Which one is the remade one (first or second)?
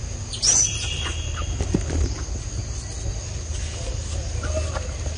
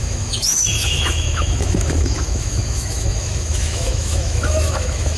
second